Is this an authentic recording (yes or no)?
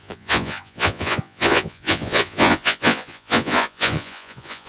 no